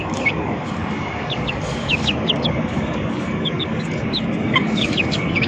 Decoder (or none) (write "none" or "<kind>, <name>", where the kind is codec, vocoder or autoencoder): codec, DAC